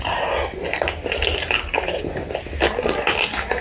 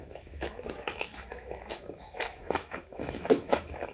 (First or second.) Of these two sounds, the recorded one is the first